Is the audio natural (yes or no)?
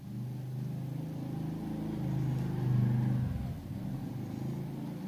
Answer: yes